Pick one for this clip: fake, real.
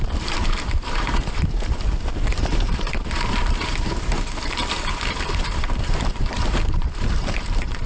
fake